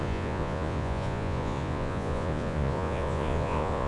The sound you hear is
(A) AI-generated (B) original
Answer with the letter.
A